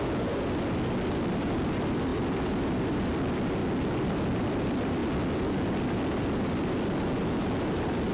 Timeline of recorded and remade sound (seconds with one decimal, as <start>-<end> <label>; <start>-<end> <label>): 0.0-8.1 recorded